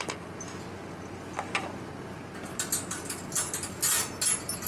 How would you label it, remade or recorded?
recorded